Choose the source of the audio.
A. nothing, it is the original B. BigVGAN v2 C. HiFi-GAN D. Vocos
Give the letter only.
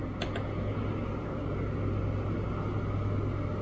A